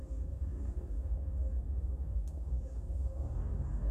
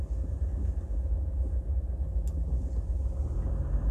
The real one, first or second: second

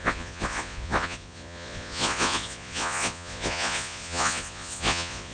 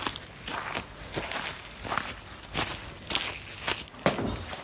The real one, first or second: second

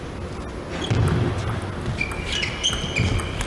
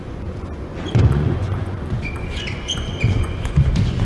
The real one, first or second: first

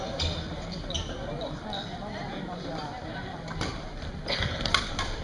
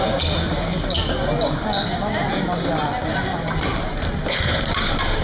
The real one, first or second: second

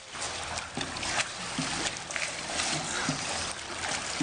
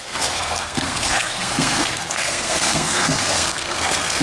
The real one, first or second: first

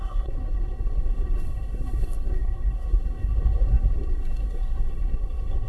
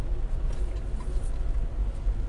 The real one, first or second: second